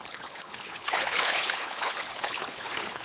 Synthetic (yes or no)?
yes